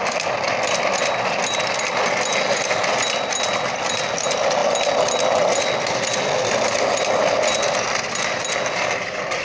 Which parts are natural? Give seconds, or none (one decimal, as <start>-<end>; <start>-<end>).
0.0-9.4